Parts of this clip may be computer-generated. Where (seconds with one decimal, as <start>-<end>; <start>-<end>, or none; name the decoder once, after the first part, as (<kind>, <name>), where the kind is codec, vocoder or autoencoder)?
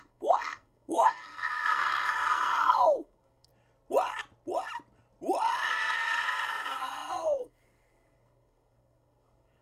0.0-3.5 (codec, SNAC); 5.7-9.6